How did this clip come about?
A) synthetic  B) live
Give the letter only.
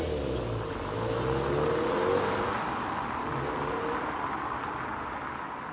B